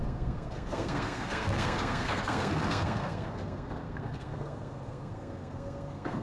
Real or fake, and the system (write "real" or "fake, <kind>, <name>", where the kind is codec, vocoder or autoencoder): fake, codec, SNAC